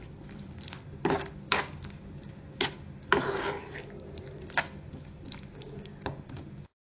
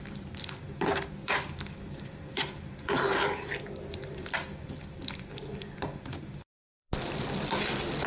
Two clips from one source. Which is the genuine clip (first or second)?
first